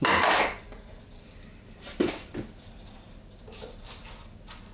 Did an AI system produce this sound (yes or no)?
no